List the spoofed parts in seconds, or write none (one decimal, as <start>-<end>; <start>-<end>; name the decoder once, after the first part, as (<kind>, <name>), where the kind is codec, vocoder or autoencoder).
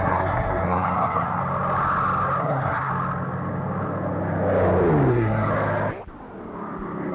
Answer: 0.0-1.4 (codec, SNAC); 2.4-2.9; 5.1-5.5